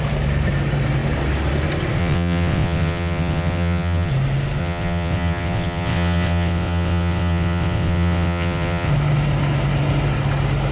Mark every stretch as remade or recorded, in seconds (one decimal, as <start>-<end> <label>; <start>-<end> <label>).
0.0-2.0 recorded; 2.0-4.1 remade; 4.1-4.6 recorded; 4.6-8.9 remade; 8.9-10.7 recorded